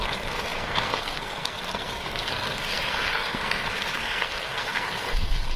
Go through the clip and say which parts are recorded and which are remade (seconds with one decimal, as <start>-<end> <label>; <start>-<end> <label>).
0.0-5.6 remade